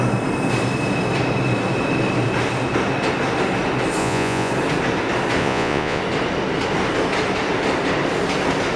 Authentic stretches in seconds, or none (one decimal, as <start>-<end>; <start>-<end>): 0.0-4.0; 4.5-5.4; 6.0-8.8